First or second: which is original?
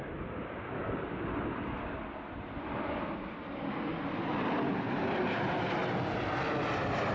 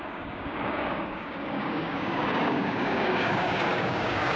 first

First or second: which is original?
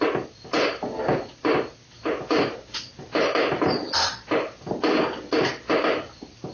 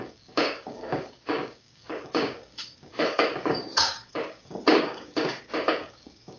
first